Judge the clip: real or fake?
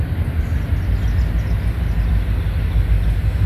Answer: real